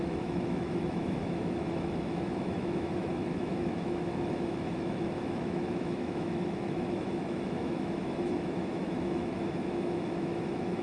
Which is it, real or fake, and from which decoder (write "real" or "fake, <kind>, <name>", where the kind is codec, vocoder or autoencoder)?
fake, autoencoder, DAC-VAE